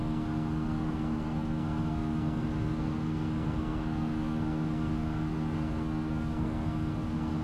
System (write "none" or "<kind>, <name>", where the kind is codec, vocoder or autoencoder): codec, SNAC